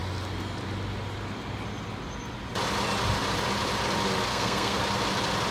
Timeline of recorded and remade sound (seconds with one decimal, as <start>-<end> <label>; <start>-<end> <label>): 0.0-4.3 recorded; 4.3-4.8 remade; 4.8-5.5 recorded